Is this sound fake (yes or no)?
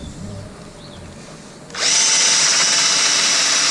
no